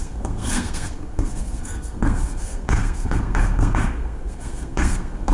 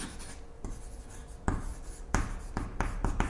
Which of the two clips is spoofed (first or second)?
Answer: first